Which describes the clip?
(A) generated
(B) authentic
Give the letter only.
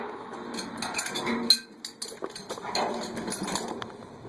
B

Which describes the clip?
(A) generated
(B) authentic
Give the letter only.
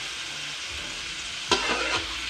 B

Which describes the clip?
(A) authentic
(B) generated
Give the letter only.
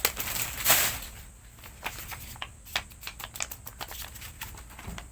A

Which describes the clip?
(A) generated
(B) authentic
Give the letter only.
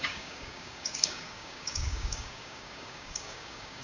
A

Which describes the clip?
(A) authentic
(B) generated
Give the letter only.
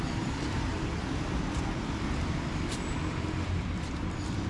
B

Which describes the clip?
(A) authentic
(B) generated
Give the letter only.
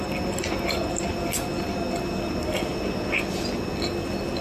A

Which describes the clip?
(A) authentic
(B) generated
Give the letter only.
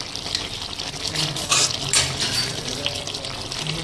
A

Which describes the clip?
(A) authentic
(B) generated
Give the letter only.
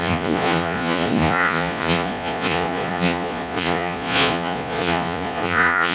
B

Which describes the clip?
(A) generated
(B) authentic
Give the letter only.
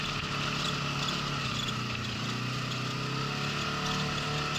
B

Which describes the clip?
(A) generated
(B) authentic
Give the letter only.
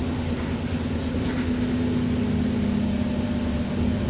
B